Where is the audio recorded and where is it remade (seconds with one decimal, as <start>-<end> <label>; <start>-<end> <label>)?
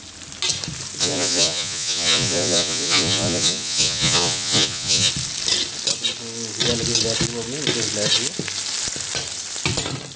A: 0.0-1.0 recorded; 1.0-5.1 remade; 5.1-10.2 recorded